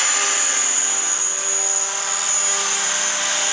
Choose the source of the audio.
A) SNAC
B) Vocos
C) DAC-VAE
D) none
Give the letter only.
D